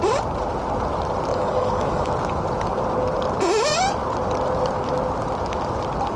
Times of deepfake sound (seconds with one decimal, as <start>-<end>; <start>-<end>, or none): 1.3-2.1